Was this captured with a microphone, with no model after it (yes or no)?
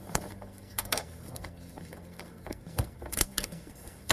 no